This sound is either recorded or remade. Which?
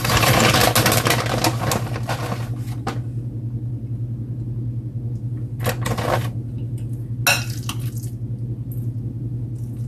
recorded